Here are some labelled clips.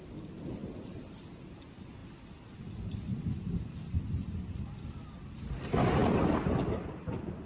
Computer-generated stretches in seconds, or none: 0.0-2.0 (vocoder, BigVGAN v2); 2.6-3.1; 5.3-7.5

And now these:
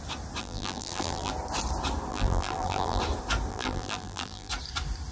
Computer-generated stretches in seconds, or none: 0.4-1.3 (vocoder, BigVGAN v2); 2.1-3.0; 3.5-4.5

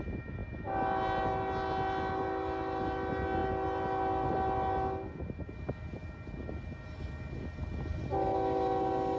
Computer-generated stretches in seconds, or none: none

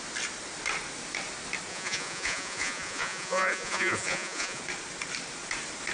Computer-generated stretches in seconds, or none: 1.7-4.6 (vocoder, Vocos)

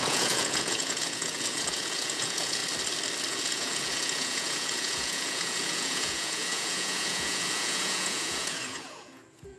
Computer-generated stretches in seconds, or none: 0.0-2.6 (vocoder, Vocos); 3.3-9.6

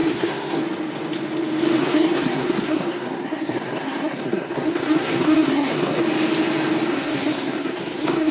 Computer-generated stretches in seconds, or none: 0.0-0.6 (codec, SNAC); 1.8-6.0; 6.9-8.3

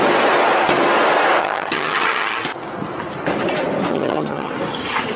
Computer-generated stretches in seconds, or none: 1.4-2.4 (vocoder, HiFi-GAN); 3.9-4.5